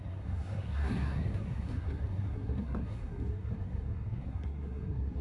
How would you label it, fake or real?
fake